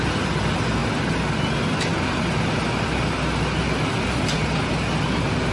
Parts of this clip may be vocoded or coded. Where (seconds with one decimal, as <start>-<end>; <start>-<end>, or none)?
none